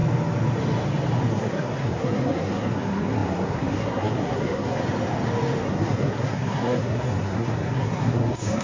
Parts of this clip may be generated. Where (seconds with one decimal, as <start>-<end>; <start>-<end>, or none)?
1.3-4.8; 5.6-8.6